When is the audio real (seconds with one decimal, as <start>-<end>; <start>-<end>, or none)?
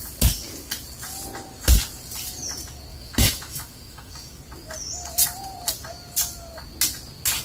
0.0-2.9; 4.4-7.4